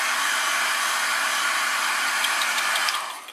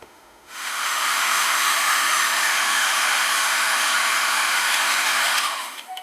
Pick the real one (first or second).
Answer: first